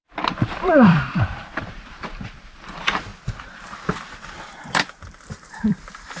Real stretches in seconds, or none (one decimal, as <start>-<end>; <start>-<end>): 3.1-4.6